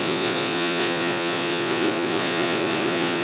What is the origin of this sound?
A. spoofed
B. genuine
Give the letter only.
A